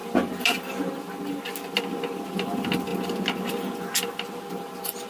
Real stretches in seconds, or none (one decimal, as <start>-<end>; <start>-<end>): 0.0-5.1